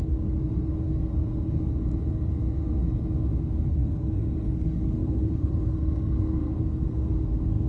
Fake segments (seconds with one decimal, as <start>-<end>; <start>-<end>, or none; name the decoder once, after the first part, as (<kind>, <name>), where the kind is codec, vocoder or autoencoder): 0.0-1.7 (codec, SNAC); 2.3-2.8; 3.4-7.7